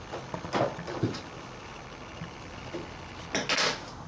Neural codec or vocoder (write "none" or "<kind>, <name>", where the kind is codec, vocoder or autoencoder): none